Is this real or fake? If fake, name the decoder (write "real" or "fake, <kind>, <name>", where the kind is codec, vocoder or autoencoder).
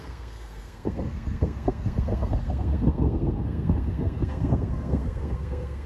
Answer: fake, codec, SNAC